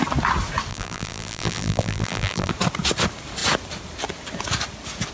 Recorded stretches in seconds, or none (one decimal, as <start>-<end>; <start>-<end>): 0.0-0.7; 2.5-5.1